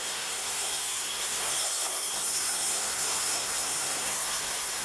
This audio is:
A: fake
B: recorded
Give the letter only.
A